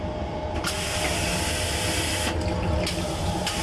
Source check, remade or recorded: recorded